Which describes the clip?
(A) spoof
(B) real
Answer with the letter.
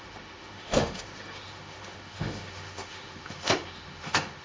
A